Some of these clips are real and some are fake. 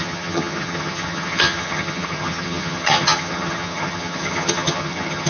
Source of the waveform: fake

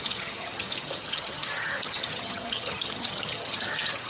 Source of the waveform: fake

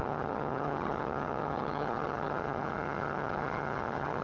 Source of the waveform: fake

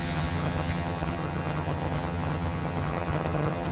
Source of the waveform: fake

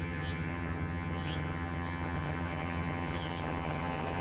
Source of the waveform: fake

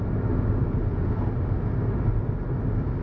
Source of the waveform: real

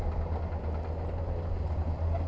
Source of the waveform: real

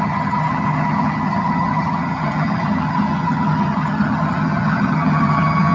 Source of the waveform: fake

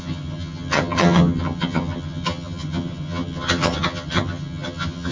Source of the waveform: fake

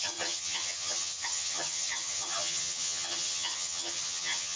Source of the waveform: fake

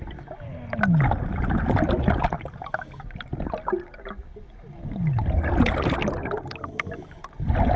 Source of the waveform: real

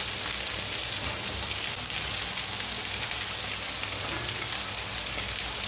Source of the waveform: real